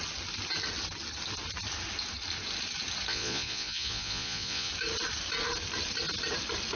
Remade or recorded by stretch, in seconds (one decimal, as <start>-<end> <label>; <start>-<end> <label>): 0.0-3.1 recorded; 3.1-4.7 remade; 4.7-6.8 recorded